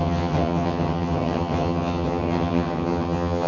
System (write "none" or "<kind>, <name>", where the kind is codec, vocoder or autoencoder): vocoder, HiFi-GAN